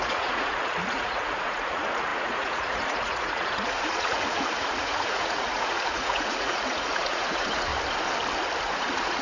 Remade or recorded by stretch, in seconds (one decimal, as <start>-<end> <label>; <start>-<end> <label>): 0.0-7.7 remade; 7.7-8.6 recorded; 8.6-9.2 remade